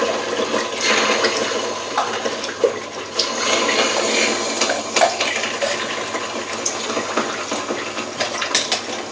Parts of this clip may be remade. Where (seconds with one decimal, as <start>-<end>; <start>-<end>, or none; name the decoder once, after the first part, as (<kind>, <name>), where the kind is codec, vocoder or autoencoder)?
none